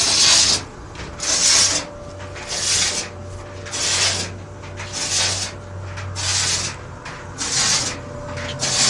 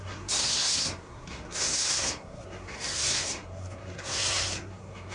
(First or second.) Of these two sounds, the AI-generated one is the second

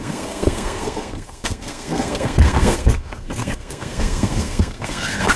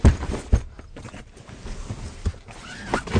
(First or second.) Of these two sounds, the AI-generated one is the first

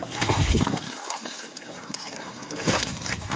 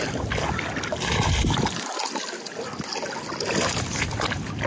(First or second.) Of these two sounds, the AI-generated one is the first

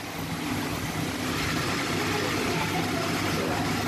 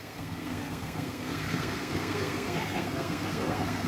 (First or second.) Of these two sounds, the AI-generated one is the second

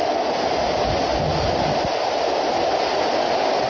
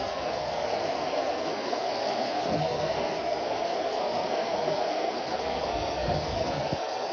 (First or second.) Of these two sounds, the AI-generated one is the second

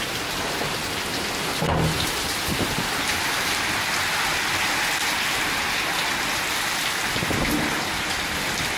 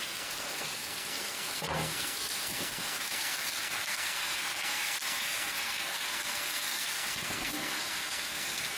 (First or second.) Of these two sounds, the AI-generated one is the second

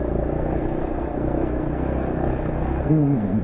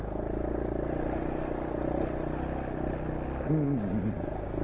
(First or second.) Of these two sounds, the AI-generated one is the first